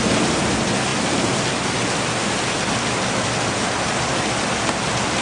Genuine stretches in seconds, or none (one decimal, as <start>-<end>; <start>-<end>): 0.0-5.2